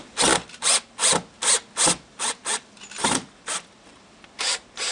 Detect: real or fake real